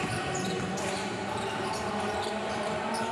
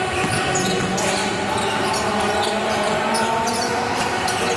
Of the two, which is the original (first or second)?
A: second